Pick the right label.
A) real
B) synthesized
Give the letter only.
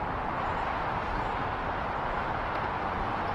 A